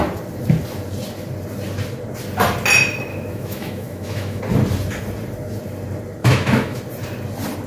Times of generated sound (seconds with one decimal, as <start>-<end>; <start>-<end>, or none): 3.1-4.4; 6.2-6.8

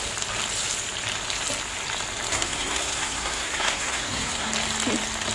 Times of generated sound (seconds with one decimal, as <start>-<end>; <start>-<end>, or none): 2.3-4.5

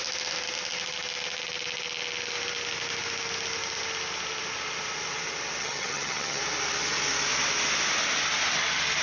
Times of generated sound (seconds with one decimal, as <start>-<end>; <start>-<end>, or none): 5.6-6.4

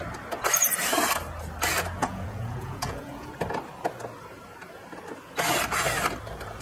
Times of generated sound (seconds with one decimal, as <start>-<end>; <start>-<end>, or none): 2.0-3.3

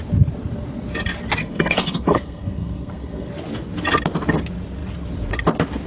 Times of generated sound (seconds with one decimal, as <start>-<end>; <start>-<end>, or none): 1.4-3.3